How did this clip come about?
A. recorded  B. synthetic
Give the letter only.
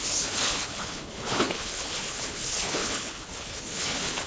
B